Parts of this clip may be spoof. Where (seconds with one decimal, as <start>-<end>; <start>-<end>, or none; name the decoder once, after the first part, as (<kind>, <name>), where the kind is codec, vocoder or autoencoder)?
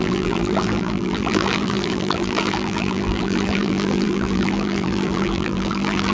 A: 0.0-6.1 (vocoder, BigVGAN v2)